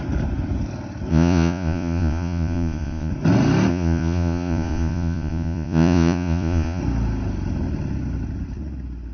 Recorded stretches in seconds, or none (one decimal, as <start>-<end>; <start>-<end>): 0.0-1.1; 3.1-3.7; 6.8-9.1